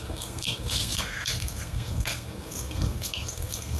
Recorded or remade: remade